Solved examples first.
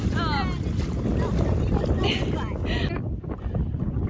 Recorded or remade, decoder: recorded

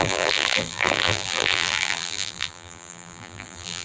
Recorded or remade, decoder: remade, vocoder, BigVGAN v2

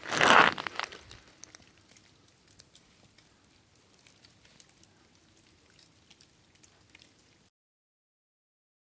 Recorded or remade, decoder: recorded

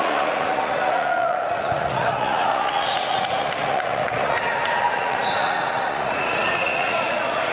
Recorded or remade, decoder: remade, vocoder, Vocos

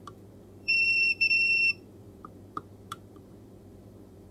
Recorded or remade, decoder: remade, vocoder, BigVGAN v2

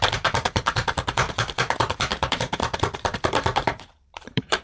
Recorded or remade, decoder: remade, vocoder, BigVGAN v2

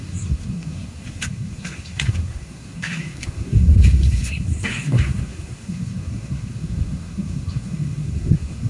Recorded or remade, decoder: remade, codec, SNAC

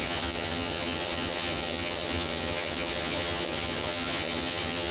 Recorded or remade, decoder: remade, vocoder, HiFi-GAN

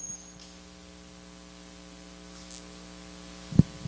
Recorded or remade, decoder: recorded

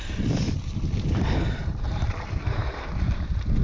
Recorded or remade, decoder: recorded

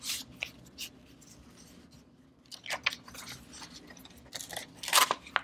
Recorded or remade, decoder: recorded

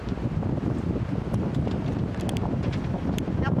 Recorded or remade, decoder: recorded